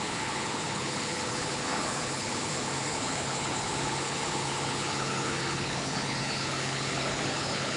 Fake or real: fake